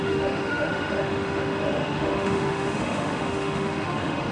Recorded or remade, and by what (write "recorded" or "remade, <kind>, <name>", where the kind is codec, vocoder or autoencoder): remade, autoencoder, DAC-VAE